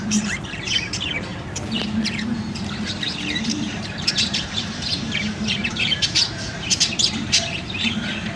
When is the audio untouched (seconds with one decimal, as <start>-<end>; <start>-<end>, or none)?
1.3-2.8